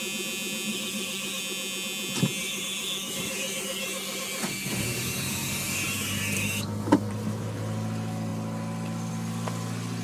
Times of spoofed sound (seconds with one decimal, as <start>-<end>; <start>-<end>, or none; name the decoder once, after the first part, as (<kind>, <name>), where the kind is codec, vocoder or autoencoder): 0.7-1.4 (codec, DAC); 2.4-7.1